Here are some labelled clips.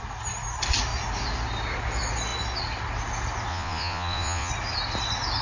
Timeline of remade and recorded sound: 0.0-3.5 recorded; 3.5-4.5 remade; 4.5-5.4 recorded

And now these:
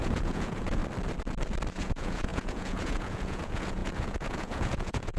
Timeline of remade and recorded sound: 0.0-0.8 remade; 0.8-1.8 recorded; 1.8-5.2 remade

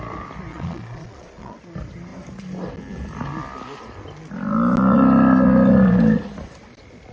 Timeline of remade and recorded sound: 0.0-0.5 recorded; 0.5-1.6 remade; 1.6-7.1 recorded

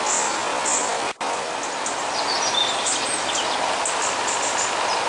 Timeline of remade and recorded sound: 0.0-5.1 recorded

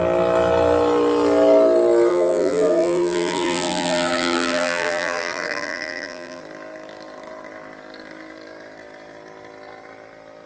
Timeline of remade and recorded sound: 0.0-2.1 recorded; 2.1-6.4 remade; 6.4-10.5 recorded

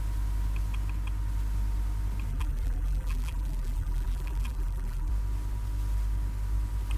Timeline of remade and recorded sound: 0.0-2.3 recorded; 2.3-5.1 remade; 5.1-7.0 recorded

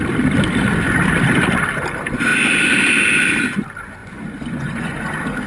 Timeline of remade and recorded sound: 0.0-4.0 recorded; 4.0-5.1 remade; 5.1-5.5 recorded